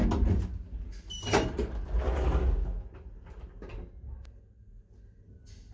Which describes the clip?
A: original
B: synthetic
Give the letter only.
A